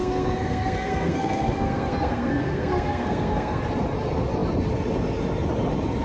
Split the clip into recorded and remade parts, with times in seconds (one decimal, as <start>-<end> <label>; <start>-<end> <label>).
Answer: 0.0-3.6 remade; 3.6-6.0 recorded